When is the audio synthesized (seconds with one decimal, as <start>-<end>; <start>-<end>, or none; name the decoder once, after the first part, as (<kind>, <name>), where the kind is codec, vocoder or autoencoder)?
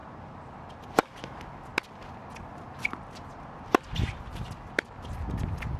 0.0-0.7 (vocoder, BigVGAN v2)